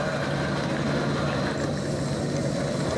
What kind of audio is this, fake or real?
real